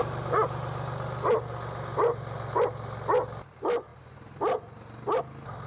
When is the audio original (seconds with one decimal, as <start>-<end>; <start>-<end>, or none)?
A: 0.0-5.7